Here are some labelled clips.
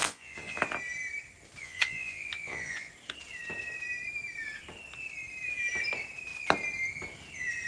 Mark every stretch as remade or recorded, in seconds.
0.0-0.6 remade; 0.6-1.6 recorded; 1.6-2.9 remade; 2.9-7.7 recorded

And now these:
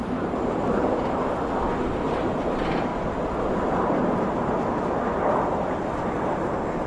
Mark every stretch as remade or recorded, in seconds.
0.0-0.9 remade; 0.9-1.8 recorded; 1.8-2.9 remade; 2.9-6.9 recorded

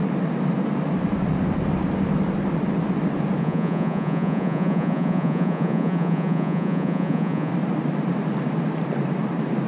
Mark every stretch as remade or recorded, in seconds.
0.0-3.4 recorded; 3.4-7.5 remade; 7.5-9.7 recorded

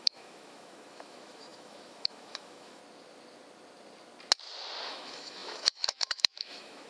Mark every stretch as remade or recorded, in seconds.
0.0-2.8 remade; 2.8-4.9 recorded; 4.9-6.9 remade

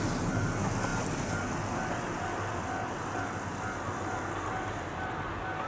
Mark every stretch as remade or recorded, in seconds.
0.0-5.7 recorded

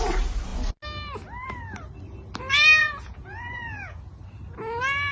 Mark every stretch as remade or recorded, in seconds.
0.0-2.8 recorded; 2.8-4.0 remade; 4.0-5.1 recorded

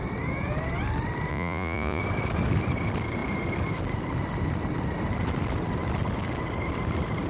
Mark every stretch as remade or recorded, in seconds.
0.0-1.3 recorded; 1.3-2.0 remade; 2.0-7.3 recorded